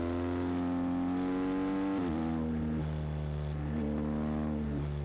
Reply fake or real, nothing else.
real